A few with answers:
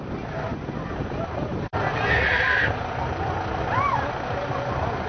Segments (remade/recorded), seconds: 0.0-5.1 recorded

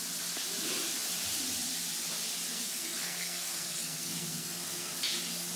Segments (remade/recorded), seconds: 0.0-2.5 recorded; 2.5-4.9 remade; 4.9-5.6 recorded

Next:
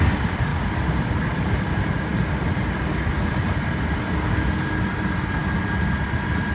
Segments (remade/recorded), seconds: 0.0-0.5 remade; 0.5-1.1 recorded; 1.1-2.1 remade; 2.1-3.3 recorded; 3.3-6.5 remade

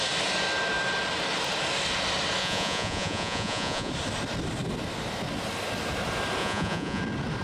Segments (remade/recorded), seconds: 0.0-2.4 recorded; 2.4-3.9 remade; 3.9-6.4 recorded; 6.4-7.0 remade; 7.0-7.4 recorded